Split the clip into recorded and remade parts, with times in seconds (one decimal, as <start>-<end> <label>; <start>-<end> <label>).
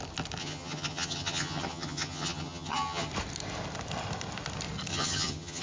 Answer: 0.0-0.4 recorded; 0.4-3.1 remade; 3.1-4.9 recorded; 4.9-5.6 remade